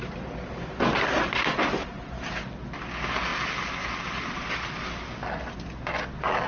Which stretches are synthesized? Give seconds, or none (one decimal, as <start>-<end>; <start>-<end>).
none